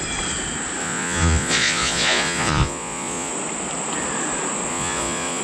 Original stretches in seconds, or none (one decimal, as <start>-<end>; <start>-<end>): 0.0-0.8; 3.3-4.7